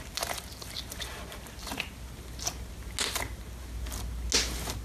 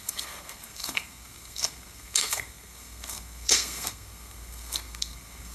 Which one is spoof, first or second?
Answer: second